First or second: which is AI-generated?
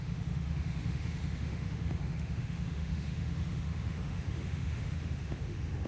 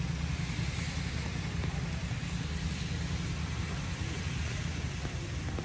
first